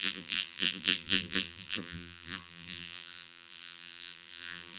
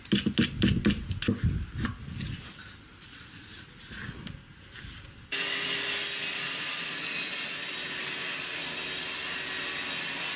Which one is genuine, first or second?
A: second